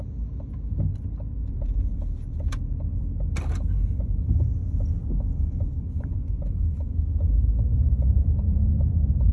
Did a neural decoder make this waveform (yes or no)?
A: no